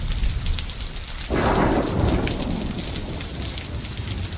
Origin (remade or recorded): recorded